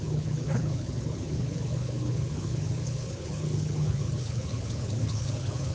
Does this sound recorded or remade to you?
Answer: remade